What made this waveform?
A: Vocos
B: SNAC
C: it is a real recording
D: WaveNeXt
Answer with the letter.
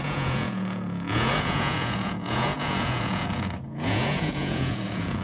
A